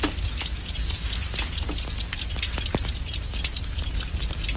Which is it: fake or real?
real